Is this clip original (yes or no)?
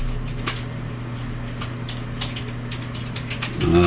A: yes